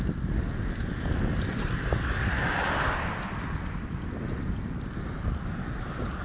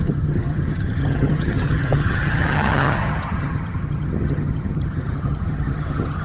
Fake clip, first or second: second